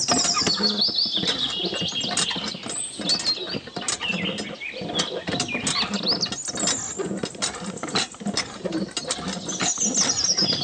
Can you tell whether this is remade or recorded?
recorded